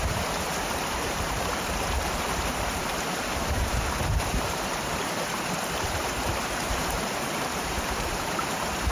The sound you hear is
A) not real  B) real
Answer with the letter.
A